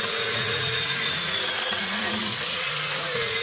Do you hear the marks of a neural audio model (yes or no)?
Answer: yes